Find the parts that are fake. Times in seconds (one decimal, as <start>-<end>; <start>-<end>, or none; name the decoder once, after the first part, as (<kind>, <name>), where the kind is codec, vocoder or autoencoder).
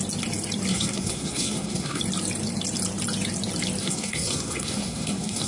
0.7-2.0 (codec, SNAC); 3.8-5.5